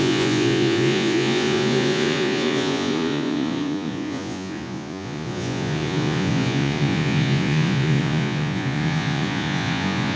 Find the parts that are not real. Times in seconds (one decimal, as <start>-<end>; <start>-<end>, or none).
0.0-10.2